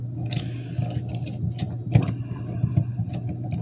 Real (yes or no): yes